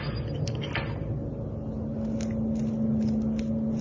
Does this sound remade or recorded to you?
recorded